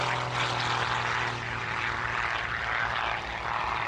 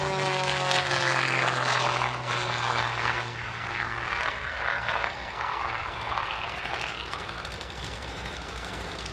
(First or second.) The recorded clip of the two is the first